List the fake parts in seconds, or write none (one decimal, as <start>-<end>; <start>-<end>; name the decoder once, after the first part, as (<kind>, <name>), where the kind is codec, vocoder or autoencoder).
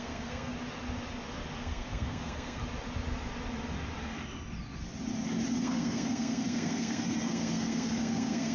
0.0-0.5 (codec, SNAC); 1.6-2.6; 5.6-8.5